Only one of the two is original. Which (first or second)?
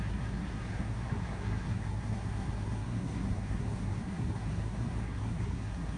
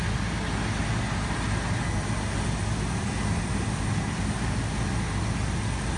second